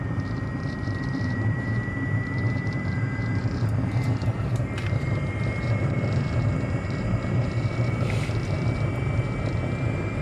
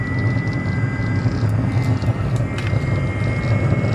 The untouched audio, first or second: second